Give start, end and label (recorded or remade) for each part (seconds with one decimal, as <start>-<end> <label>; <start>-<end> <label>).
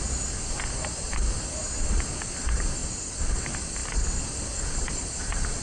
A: 0.0-2.8 recorded; 2.8-3.3 remade; 3.3-3.8 recorded; 3.8-5.1 remade; 5.1-5.6 recorded